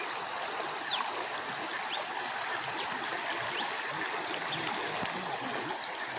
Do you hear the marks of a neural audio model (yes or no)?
no